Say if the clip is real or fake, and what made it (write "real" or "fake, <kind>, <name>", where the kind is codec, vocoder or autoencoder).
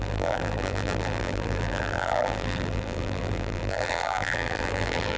fake, vocoder, BigVGAN v2